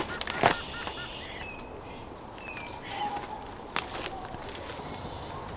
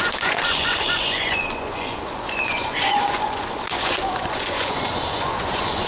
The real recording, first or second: first